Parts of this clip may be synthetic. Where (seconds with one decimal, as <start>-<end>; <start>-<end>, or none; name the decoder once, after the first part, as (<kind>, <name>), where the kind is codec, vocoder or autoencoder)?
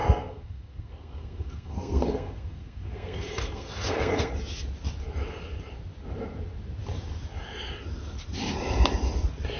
0.0-4.3 (codec, SNAC)